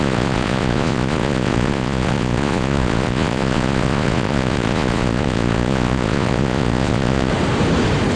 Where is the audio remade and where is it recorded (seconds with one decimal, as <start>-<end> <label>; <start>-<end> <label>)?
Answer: 0.0-7.3 remade; 7.3-8.2 recorded